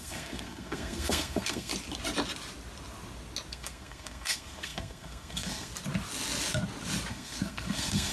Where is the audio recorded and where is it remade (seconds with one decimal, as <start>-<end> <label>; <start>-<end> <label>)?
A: 0.0-1.7 remade; 1.7-3.5 recorded; 3.5-5.7 remade; 5.7-7.1 recorded; 7.1-8.1 remade